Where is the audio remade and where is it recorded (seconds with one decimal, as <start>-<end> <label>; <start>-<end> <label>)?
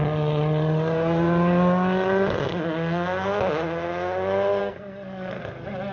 0.0-4.6 recorded; 4.6-5.4 remade; 5.4-5.9 recorded